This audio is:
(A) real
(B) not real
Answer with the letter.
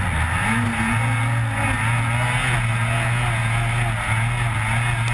A